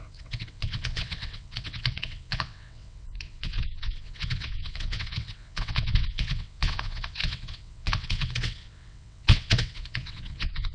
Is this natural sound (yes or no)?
no